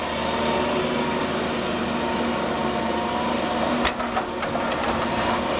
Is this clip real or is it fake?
real